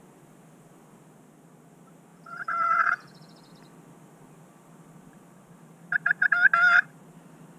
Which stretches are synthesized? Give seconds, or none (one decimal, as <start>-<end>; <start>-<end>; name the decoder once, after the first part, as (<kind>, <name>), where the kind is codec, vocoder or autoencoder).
2.1-3.5 (vocoder, Vocos)